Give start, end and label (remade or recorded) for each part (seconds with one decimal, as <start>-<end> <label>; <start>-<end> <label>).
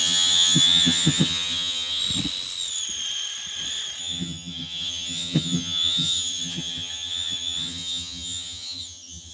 0.0-2.0 remade; 2.0-4.0 recorded; 4.0-9.3 remade